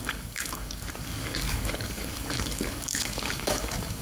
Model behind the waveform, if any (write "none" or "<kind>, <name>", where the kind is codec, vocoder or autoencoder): codec, DAC